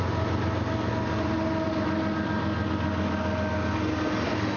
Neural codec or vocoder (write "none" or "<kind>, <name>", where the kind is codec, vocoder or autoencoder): none